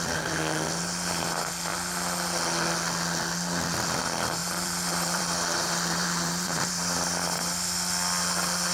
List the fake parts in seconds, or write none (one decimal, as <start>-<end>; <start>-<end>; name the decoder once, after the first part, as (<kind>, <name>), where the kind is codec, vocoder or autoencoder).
4.4-7.0 (vocoder, BigVGAN v2)